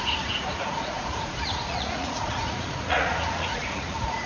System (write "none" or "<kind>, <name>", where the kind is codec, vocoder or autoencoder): vocoder, Vocos